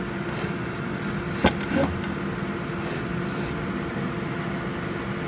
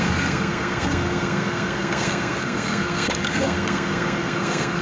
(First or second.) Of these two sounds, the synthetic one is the second